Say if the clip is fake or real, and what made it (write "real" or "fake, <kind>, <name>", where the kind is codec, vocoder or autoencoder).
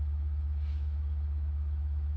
fake, autoencoder, DAC-VAE